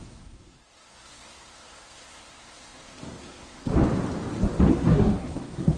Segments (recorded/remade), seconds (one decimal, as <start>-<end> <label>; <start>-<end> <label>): 0.0-3.7 remade; 3.7-4.7 recorded; 4.7-5.8 remade